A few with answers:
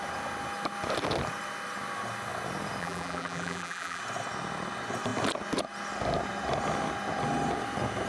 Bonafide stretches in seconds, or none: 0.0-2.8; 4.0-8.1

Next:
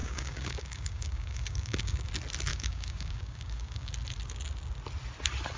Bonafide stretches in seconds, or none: 2.1-2.5; 3.9-5.6

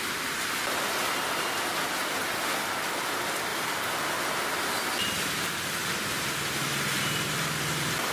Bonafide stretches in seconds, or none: 0.0-3.5; 4.4-5.8; 7.3-8.1

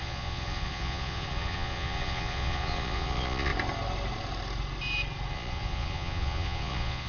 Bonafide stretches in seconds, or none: 3.5-5.3

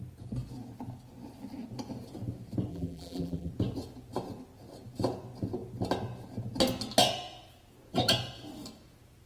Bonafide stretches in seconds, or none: 0.0-2.7; 3.5-9.3